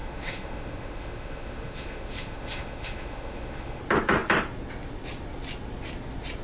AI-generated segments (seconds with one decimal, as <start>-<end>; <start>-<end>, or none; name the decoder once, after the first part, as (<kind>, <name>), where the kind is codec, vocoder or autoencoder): 0.0-3.8 (autoencoder, DAC-VAE)